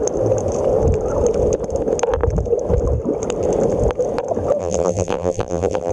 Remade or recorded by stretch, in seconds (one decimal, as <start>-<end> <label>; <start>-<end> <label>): 0.0-4.6 recorded; 4.6-5.9 remade